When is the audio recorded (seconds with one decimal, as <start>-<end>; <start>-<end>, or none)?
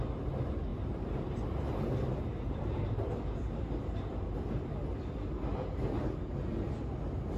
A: 0.0-0.7; 4.3-5.5; 6.3-7.4